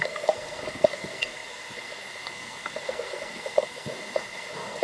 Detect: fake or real fake